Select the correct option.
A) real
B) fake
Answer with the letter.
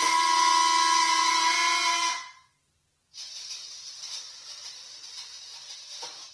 A